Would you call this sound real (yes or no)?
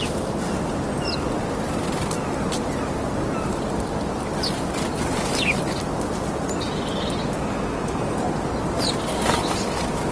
yes